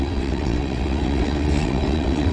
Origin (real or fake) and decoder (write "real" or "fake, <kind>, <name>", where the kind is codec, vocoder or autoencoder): fake, vocoder, WaveNeXt